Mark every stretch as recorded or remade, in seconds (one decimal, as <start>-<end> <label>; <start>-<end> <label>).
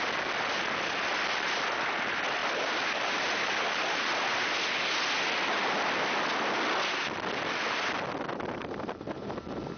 0.0-9.8 recorded